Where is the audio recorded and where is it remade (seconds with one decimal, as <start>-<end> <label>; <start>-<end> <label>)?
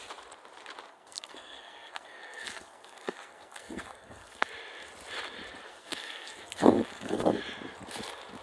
0.0-0.9 recorded; 0.9-4.5 remade; 4.5-5.7 recorded; 5.7-7.4 remade; 7.4-8.4 recorded